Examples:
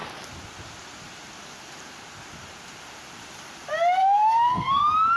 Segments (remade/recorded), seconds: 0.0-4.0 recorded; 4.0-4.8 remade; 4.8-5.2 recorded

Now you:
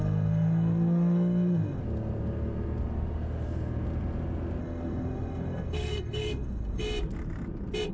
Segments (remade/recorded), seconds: 0.0-1.8 remade; 1.8-4.6 recorded; 4.6-6.8 remade; 6.8-7.9 recorded

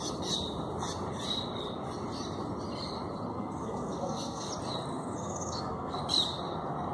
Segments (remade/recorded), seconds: 0.0-3.3 recorded; 3.3-4.5 remade; 4.5-4.9 recorded; 4.9-6.0 remade; 6.0-6.9 recorded

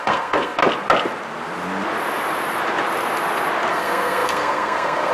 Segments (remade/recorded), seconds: 0.0-0.6 remade; 0.6-3.7 recorded; 3.7-5.1 remade

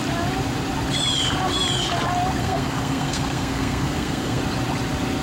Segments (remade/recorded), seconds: 0.0-2.4 recorded; 2.4-4.4 remade; 4.4-5.2 recorded

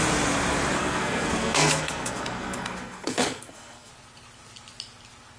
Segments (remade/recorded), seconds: 0.0-0.8 recorded; 0.8-3.9 remade; 3.9-5.4 recorded

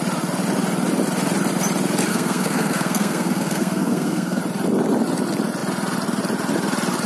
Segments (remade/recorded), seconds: 0.0-2.1 recorded; 2.1-4.4 remade; 4.4-7.1 recorded

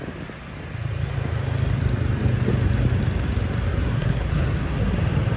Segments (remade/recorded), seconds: 0.0-3.7 recorded; 3.7-5.0 remade; 5.0-5.4 recorded